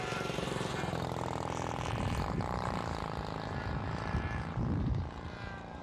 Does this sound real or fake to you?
fake